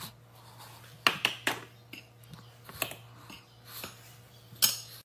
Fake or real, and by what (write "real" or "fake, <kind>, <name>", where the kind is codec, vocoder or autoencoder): real